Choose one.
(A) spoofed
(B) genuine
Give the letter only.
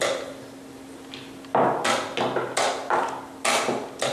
B